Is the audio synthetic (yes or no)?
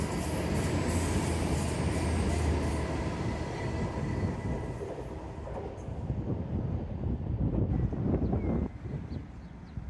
no